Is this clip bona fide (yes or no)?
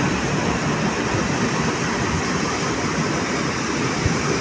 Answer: yes